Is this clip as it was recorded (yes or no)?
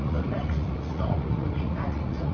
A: no